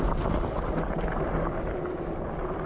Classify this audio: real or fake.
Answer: real